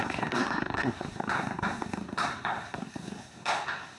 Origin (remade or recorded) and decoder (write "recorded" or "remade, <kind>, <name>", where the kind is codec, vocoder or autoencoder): remade, codec, SNAC